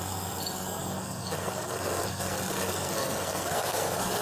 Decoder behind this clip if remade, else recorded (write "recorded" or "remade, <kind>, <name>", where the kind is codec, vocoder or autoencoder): remade, codec, SNAC